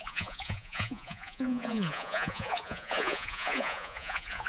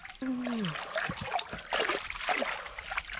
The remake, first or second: first